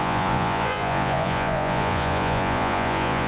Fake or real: fake